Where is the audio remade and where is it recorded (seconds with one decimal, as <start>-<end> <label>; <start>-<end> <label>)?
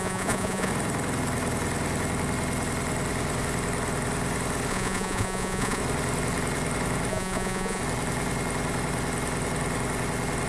0.0-0.7 remade; 0.7-4.7 recorded; 4.7-5.8 remade; 5.8-7.1 recorded; 7.1-7.8 remade; 7.8-10.5 recorded